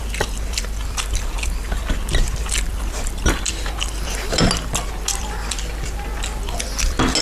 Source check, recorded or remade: recorded